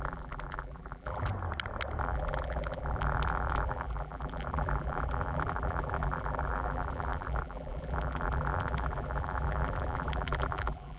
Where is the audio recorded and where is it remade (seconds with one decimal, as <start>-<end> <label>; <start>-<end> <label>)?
0.0-1.3 remade; 1.3-2.0 recorded; 2.0-11.0 remade